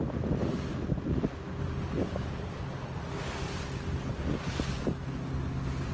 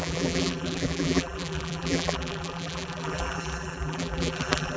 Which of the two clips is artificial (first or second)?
second